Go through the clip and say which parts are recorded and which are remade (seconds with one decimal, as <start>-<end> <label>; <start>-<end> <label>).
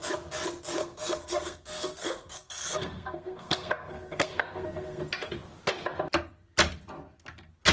0.0-0.8 recorded; 0.8-5.0 remade; 5.0-7.7 recorded